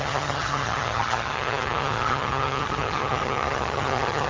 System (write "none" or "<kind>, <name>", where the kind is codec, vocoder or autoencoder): vocoder, HiFi-GAN